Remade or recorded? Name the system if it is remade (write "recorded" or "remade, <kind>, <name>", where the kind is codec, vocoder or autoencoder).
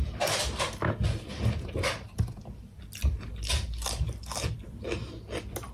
recorded